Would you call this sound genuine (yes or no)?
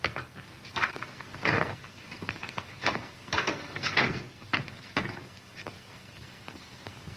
no